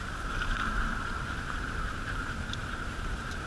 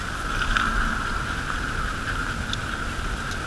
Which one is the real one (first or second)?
second